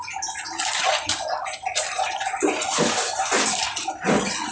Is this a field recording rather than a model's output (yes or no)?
yes